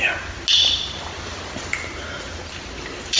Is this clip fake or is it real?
real